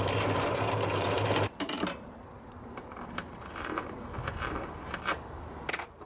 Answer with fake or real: fake